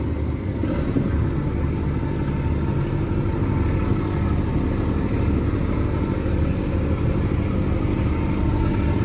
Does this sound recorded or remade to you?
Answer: recorded